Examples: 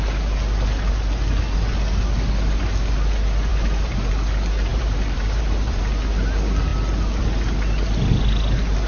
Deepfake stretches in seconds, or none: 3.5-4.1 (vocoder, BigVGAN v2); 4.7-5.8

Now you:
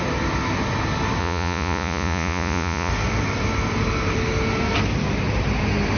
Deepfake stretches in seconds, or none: 1.2-2.9 (vocoder, Vocos)

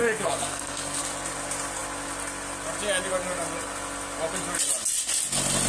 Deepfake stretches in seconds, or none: 0.0-1.0 (codec, SNAC)

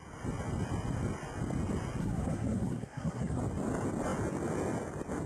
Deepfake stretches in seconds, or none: 2.0-3.4 (codec, SNAC)